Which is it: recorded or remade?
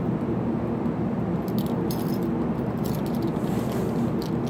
recorded